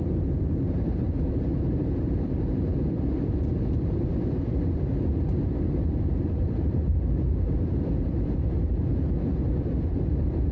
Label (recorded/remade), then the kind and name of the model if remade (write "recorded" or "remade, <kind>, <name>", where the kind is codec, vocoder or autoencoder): remade, vocoder, BigVGAN v2